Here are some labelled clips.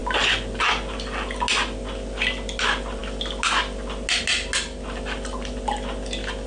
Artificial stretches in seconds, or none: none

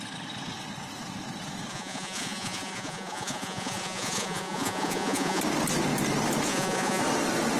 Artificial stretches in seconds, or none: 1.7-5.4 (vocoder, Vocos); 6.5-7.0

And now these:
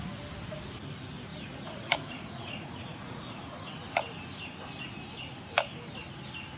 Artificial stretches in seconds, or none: 1.3-3.7 (vocoder, Vocos)